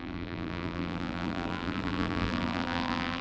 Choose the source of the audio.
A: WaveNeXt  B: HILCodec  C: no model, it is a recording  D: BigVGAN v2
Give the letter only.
D